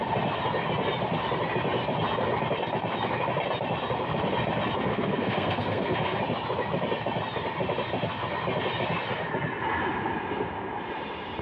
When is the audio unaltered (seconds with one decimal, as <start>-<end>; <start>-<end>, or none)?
0.0-4.9; 6.2-11.4